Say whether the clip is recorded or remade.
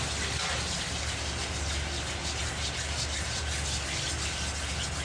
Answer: recorded